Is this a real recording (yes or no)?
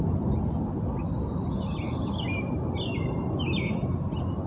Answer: yes